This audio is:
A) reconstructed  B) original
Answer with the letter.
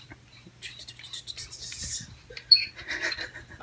B